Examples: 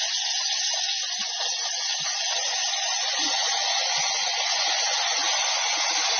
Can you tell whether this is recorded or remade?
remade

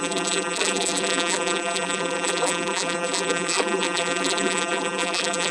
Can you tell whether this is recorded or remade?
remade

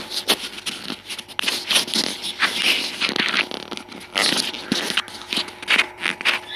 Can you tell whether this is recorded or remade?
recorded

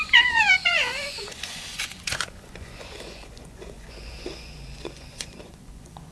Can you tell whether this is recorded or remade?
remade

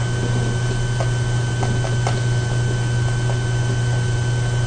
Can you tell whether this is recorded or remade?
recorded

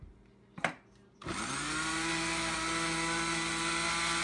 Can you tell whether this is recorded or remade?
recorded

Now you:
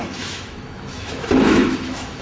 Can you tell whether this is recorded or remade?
remade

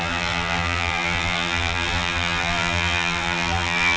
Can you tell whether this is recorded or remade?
remade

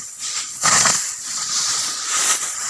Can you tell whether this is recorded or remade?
remade